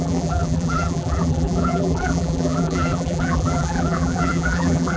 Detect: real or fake fake